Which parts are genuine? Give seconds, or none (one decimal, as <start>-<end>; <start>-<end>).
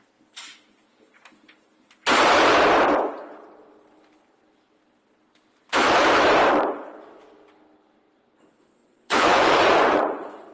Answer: 0.0-8.8